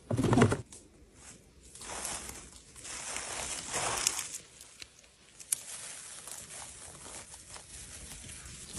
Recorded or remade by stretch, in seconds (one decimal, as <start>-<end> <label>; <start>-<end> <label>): 0.0-8.8 recorded